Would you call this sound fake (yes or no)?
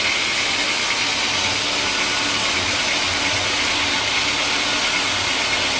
no